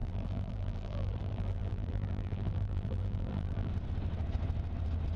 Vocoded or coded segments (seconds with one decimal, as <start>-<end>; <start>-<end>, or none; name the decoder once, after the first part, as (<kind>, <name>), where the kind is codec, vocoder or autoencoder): 0.0-3.7 (vocoder, BigVGAN v2)